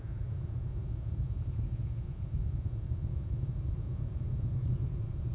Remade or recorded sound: remade